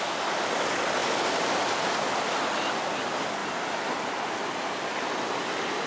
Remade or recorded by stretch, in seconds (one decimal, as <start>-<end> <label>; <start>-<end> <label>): 0.0-5.9 recorded